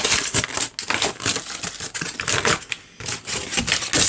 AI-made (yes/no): no